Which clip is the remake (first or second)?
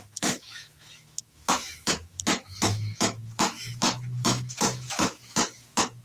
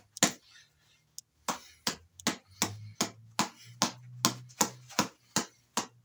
first